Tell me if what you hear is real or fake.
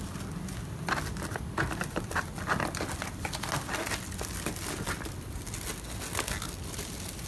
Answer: real